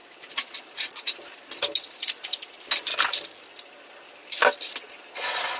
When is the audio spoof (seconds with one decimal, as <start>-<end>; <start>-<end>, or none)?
2.9-4.4